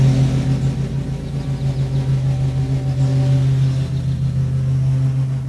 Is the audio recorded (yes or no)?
yes